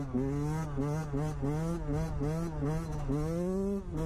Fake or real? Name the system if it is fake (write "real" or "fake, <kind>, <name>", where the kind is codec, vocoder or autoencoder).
real